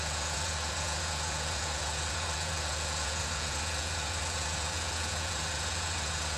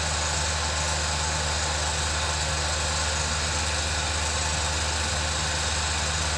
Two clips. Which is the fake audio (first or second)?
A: first